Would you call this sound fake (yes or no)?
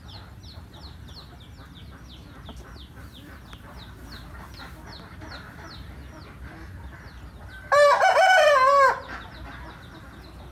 no